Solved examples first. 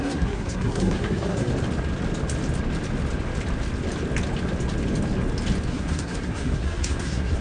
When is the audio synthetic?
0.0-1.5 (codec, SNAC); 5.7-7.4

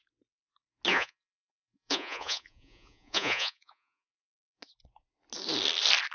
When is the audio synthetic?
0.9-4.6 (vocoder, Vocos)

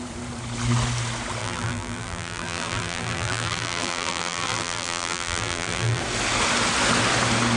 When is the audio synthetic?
1.4-6.0 (vocoder, BigVGAN v2)

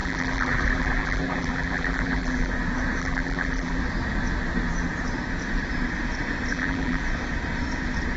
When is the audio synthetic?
0.0-2.5 (vocoder, BigVGAN v2); 3.0-3.8; 6.5-7.0

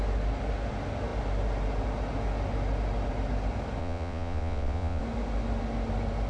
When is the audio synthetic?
3.8-5.0 (vocoder, Vocos)

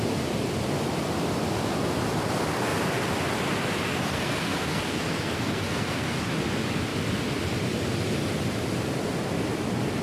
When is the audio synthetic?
3.8-6.3 (codec, SNAC)